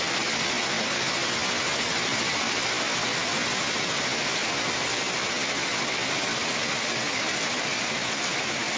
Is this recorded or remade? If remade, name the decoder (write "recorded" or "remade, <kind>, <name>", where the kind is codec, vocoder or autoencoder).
recorded